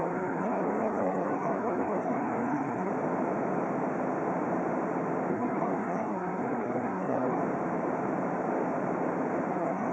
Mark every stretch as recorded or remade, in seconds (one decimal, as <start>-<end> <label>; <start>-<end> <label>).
0.0-2.9 remade; 2.9-5.3 recorded; 5.3-7.4 remade; 7.4-9.5 recorded; 9.5-9.9 remade